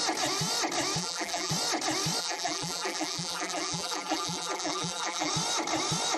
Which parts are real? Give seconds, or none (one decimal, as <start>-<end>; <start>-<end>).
0.0-1.0; 1.5-2.2; 5.3-6.2